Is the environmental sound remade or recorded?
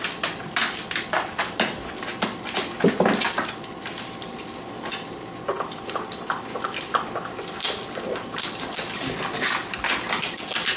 recorded